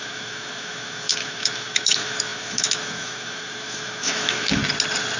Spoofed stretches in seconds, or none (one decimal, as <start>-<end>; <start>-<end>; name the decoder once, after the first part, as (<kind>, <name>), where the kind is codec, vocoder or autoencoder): 0.0-4.6 (autoencoder, DAC-VAE)